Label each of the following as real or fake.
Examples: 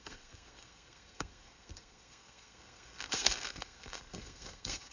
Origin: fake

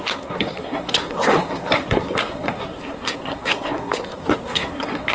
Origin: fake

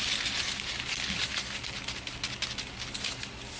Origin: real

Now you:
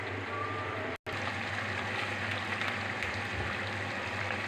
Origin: real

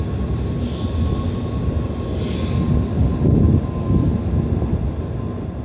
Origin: real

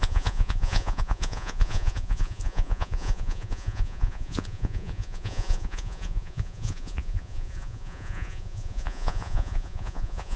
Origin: fake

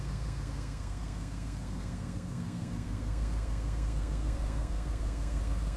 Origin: fake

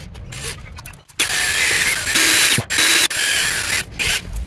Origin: real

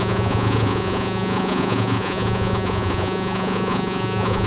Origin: fake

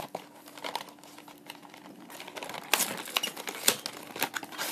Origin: real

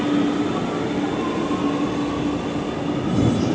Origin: real